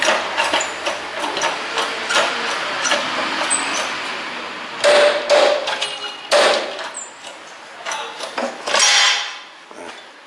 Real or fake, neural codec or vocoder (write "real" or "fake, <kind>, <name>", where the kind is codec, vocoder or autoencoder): real